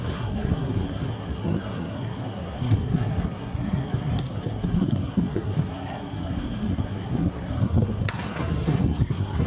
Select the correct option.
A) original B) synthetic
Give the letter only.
B